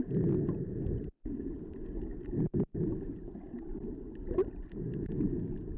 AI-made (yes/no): no